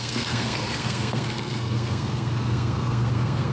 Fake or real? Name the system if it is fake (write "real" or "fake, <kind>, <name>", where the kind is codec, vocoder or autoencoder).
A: fake, codec, SNAC